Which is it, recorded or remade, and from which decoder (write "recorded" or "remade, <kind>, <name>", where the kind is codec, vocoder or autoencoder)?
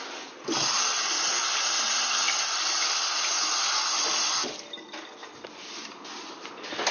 recorded